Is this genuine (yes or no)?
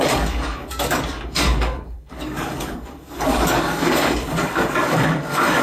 no